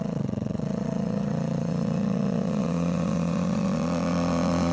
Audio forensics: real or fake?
fake